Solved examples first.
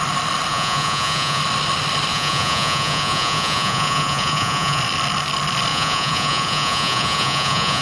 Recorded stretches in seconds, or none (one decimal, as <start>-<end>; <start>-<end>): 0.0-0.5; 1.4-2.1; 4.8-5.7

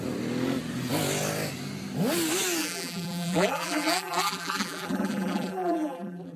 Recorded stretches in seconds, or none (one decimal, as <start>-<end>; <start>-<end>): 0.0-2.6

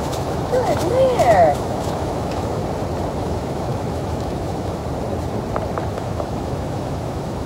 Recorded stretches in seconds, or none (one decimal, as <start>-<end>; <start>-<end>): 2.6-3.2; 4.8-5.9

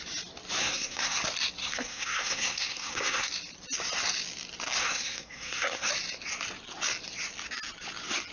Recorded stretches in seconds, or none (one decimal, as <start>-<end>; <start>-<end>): 0.0-0.6; 1.2-1.6; 3.3-4.8; 5.9-8.3

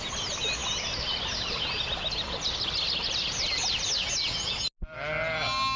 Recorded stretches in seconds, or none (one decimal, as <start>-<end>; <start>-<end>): 0.0-5.8